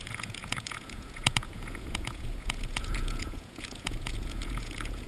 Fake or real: fake